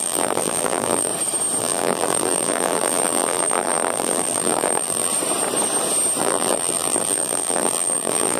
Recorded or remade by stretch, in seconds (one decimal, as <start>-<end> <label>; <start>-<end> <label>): 0.0-1.1 remade; 1.1-1.6 recorded; 1.6-5.1 remade; 5.1-6.2 recorded; 6.2-8.4 remade

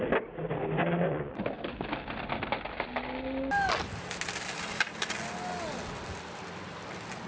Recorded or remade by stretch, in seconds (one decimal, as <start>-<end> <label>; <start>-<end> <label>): 0.0-0.8 recorded; 0.8-1.4 remade; 1.4-7.3 recorded

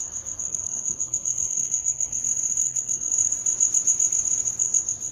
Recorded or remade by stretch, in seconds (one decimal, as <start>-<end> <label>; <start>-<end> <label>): 0.0-2.2 remade; 2.2-2.6 recorded; 2.6-3.1 remade; 3.1-5.1 recorded

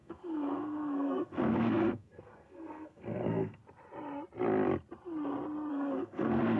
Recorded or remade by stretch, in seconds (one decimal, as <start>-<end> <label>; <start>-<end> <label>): 0.0-3.6 remade; 3.6-5.7 recorded; 5.7-6.6 remade

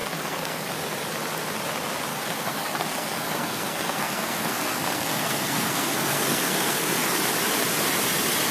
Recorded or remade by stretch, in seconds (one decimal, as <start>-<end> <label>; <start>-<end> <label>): 0.0-0.7 remade; 0.7-2.1 recorded; 2.1-7.2 remade; 7.2-8.5 recorded

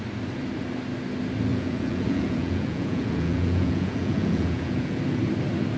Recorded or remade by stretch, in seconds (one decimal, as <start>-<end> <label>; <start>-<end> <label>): 0.0-1.5 recorded; 1.5-5.0 remade; 5.0-5.8 recorded

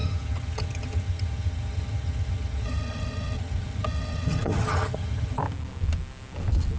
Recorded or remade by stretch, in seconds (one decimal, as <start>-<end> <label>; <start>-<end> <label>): 0.0-5.4 remade; 5.4-6.8 recorded